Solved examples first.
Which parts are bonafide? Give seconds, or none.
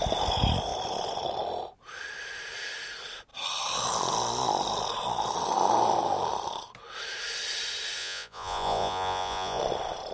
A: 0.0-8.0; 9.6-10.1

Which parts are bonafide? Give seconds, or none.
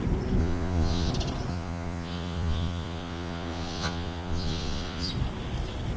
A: 0.0-0.4; 1.1-1.5; 5.1-6.0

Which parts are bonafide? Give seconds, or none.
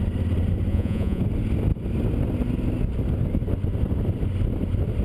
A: 0.0-0.7; 1.2-5.0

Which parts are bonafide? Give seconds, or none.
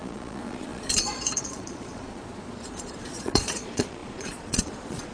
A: none